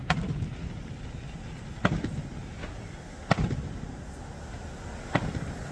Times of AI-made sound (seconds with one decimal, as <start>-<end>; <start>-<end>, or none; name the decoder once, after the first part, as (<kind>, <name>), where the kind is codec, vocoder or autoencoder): none